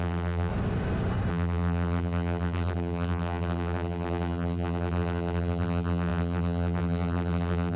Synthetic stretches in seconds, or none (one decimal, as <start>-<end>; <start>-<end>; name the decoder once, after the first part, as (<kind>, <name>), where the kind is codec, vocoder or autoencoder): 0.0-0.5 (vocoder, BigVGAN v2); 1.3-7.8